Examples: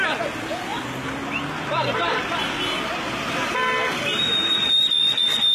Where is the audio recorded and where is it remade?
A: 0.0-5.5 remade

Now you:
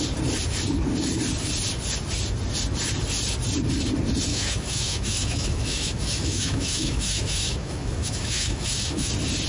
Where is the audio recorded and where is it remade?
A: 0.0-4.3 recorded; 4.3-9.1 remade; 9.1-9.5 recorded

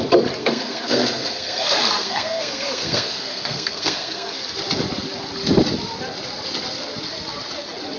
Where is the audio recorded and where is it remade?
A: 0.0-0.4 recorded; 0.4-4.4 remade; 4.4-8.0 recorded

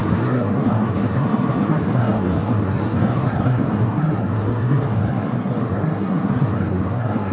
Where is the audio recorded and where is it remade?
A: 0.0-7.3 remade